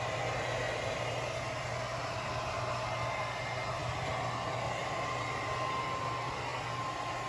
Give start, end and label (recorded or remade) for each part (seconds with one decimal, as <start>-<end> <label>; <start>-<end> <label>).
0.0-1.9 recorded; 1.9-2.7 remade; 2.7-7.3 recorded